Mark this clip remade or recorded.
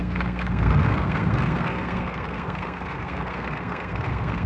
remade